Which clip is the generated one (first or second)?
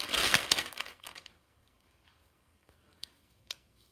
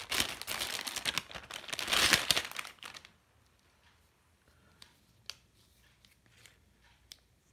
first